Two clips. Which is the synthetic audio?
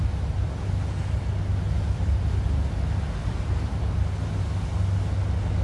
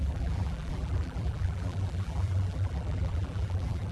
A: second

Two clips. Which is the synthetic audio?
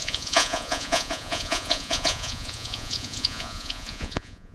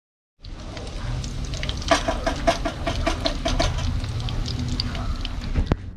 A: first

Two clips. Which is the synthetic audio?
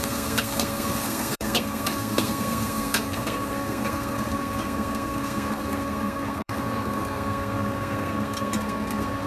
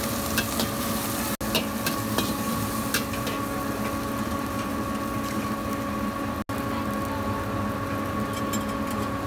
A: first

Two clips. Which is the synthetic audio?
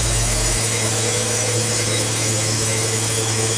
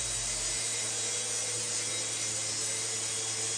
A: first